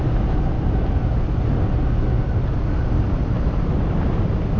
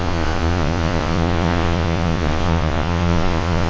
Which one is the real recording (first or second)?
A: first